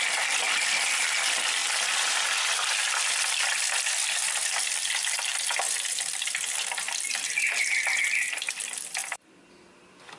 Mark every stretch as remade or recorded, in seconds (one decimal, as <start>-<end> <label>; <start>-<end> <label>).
0.0-1.6 remade; 1.6-3.2 recorded; 3.2-5.3 remade; 5.3-8.5 recorded; 8.5-10.2 remade